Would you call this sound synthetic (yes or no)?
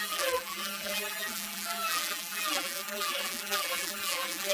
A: yes